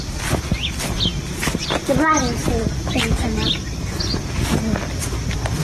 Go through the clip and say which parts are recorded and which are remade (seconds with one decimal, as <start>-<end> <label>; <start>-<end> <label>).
0.0-5.6 recorded